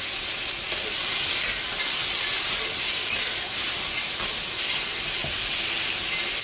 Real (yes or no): yes